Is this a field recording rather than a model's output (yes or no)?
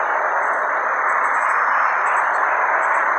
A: yes